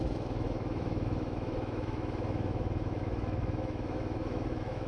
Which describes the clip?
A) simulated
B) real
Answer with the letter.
A